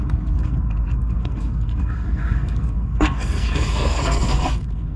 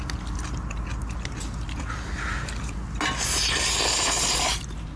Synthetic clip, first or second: first